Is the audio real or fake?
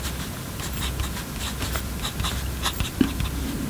real